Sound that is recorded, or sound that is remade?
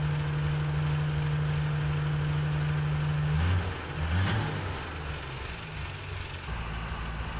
recorded